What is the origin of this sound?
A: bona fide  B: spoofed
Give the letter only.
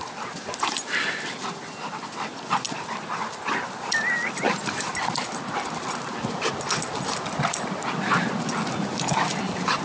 A